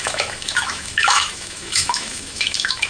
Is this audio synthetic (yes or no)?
yes